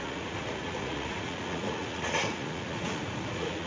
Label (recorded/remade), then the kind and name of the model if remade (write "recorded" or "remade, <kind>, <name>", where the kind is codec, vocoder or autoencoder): remade, vocoder, Vocos